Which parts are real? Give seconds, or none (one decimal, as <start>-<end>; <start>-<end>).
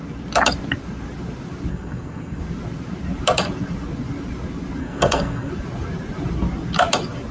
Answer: 0.0-1.7; 2.4-4.8; 5.5-7.3